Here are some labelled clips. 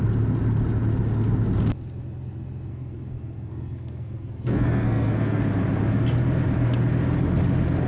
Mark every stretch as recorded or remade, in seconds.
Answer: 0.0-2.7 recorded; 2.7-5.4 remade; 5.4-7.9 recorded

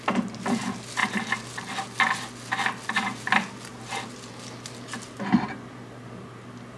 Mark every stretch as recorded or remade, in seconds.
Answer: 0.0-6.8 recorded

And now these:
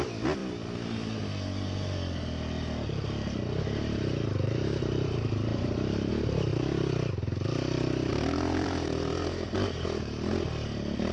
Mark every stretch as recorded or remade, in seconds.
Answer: 0.0-0.4 remade; 0.4-3.6 recorded; 3.6-6.5 remade; 6.5-8.1 recorded; 8.1-11.1 remade